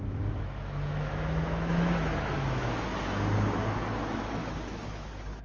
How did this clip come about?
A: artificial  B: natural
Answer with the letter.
A